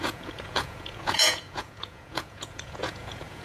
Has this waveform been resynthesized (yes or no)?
yes